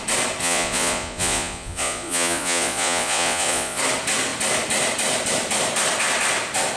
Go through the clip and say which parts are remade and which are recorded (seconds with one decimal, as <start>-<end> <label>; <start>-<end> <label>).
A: 0.0-0.4 recorded; 0.4-3.8 remade; 3.8-6.8 recorded